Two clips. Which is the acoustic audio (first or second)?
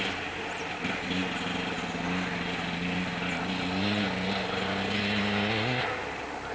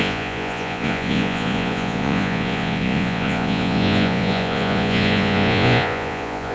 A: first